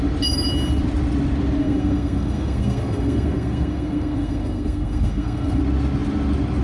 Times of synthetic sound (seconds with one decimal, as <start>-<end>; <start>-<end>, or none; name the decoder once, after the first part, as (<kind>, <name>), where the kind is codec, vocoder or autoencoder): 1.6-5.6 (codec, SNAC)